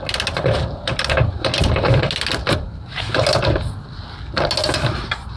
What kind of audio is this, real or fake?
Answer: real